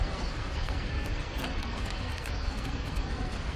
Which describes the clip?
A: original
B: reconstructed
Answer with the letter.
B